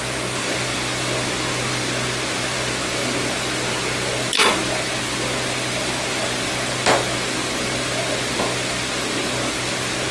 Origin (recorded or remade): recorded